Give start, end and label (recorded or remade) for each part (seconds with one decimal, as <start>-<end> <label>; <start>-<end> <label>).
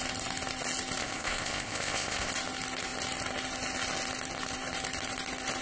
0.0-1.0 recorded; 1.0-2.3 remade; 2.3-5.6 recorded